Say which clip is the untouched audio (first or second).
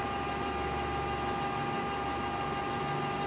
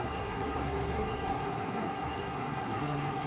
first